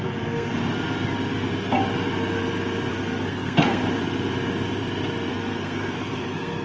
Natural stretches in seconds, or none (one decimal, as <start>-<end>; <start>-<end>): 0.5-2.9; 3.8-5.3